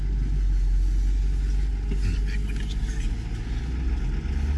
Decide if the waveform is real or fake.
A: real